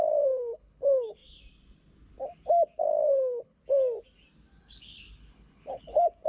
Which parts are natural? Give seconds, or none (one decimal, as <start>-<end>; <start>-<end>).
1.2-2.8; 3.6-4.6